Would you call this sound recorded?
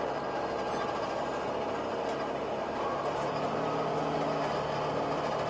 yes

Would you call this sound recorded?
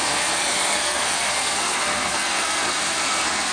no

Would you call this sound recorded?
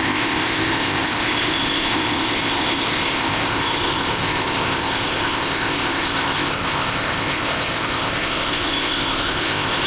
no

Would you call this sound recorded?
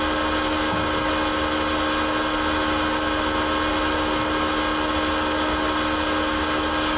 yes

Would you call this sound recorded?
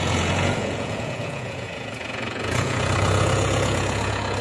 no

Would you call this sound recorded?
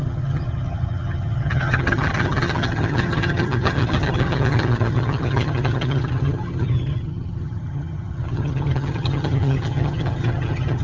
no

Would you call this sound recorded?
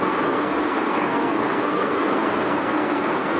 no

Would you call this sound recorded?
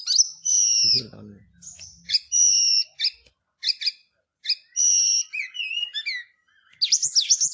yes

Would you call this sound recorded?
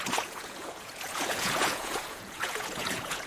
no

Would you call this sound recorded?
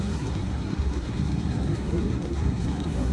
no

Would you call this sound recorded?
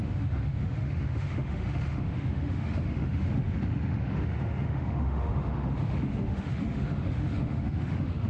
no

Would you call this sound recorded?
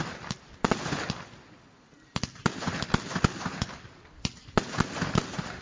yes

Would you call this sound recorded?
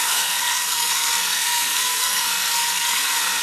no